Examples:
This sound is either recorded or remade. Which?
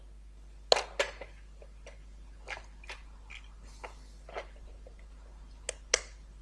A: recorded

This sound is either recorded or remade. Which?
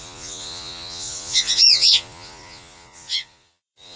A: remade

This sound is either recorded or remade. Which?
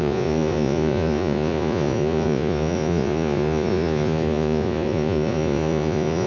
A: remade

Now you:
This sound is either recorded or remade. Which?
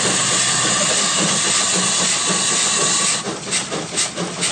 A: recorded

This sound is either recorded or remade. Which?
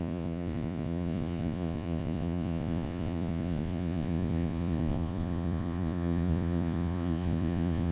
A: remade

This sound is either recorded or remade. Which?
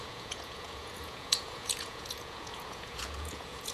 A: remade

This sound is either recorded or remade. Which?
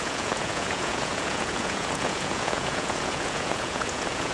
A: remade